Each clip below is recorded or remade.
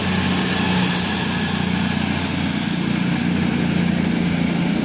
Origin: recorded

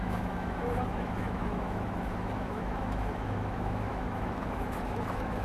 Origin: remade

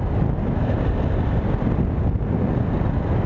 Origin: recorded